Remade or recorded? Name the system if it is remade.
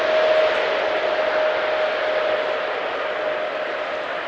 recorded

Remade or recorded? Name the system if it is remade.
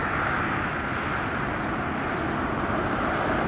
recorded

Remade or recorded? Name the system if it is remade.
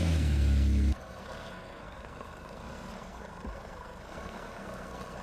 remade, codec, SNAC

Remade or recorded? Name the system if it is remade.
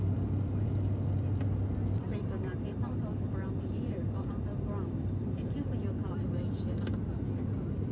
remade, vocoder, BigVGAN v2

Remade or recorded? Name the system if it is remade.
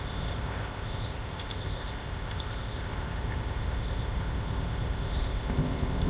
remade, codec, ZipCodec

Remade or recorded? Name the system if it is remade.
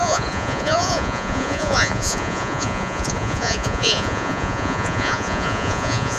remade, vocoder, Vocos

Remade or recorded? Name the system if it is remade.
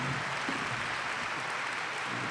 recorded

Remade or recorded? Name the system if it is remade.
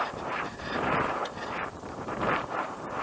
remade, vocoder, BigVGAN v2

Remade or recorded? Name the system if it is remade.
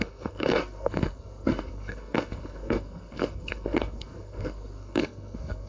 remade, codec, SNAC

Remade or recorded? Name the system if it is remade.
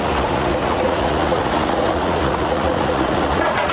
remade, vocoder, Vocos